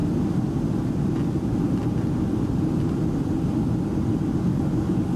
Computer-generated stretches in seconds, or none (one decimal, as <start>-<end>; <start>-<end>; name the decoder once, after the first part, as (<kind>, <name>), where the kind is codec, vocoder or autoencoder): 4.5-5.2 (codec, DAC)